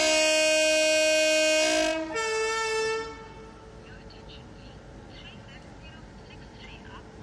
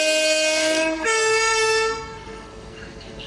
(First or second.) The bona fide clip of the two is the first